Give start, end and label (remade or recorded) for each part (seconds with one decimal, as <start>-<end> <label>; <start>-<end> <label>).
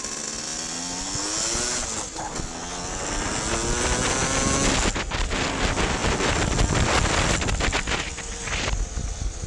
0.0-9.5 recorded